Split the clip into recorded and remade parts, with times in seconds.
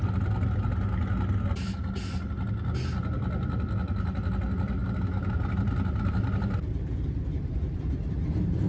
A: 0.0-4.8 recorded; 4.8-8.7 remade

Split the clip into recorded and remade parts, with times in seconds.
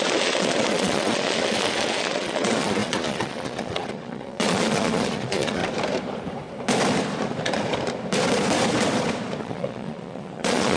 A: 0.0-5.6 remade; 5.6-9.4 recorded; 9.4-10.8 remade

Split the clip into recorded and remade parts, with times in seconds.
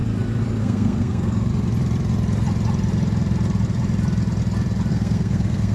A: 0.0-0.6 recorded; 0.6-1.5 remade; 1.5-4.9 recorded; 4.9-5.7 remade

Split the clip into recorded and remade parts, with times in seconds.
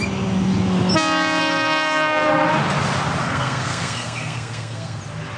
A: 0.0-1.4 recorded; 1.4-2.3 remade; 2.3-3.2 recorded; 3.2-5.0 remade; 5.0-5.4 recorded